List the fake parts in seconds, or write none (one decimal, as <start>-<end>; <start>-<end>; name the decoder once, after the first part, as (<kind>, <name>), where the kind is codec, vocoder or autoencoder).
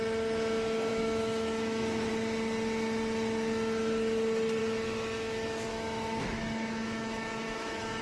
0.9-2.1 (autoencoder, DAC-VAE); 4.6-8.0